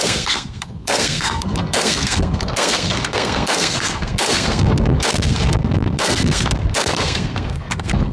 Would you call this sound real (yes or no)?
no